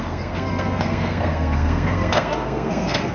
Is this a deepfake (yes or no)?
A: yes